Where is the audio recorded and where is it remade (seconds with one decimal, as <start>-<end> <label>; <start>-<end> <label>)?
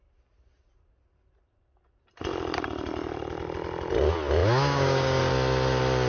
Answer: 0.0-4.4 recorded; 4.4-5.2 remade; 5.2-6.1 recorded